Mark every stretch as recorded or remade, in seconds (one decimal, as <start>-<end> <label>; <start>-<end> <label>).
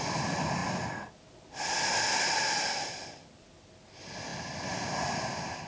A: 0.0-5.7 recorded